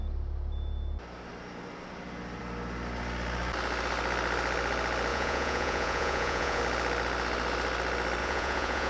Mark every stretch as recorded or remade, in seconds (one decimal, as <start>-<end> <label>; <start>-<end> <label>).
0.0-5.1 recorded; 5.1-6.6 remade; 6.6-8.2 recorded; 8.2-8.9 remade